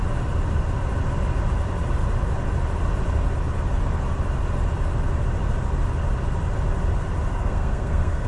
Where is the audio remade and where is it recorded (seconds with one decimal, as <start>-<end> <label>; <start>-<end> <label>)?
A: 0.0-7.3 recorded; 7.3-8.3 remade